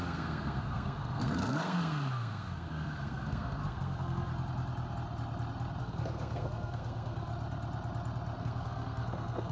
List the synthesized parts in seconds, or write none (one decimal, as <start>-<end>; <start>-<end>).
0.0-4.3; 5.8-7.3; 8.4-9.5